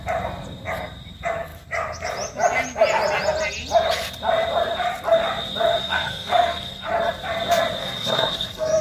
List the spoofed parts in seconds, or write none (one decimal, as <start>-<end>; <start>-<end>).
5.8-6.9; 7.8-8.8